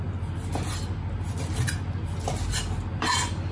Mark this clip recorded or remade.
recorded